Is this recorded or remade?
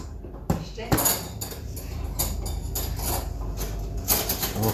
recorded